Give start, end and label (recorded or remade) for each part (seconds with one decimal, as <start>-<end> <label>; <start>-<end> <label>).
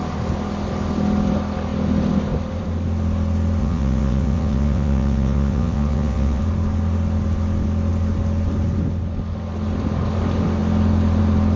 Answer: 0.0-3.6 recorded; 3.6-6.4 remade; 6.4-11.6 recorded